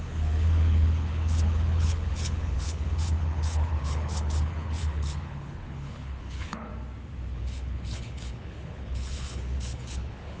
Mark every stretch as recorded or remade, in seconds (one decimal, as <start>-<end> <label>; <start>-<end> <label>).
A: 0.0-6.7 remade; 6.7-7.3 recorded; 7.3-10.4 remade